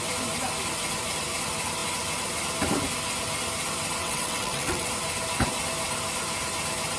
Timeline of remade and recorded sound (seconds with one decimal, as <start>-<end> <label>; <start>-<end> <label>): 0.0-4.0 recorded; 4.0-4.9 remade; 4.9-7.0 recorded